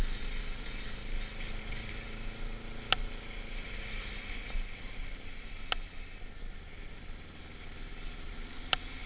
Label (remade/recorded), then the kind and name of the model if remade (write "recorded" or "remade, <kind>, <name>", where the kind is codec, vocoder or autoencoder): recorded